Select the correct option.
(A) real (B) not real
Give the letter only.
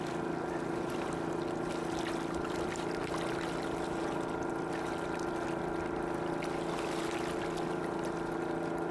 A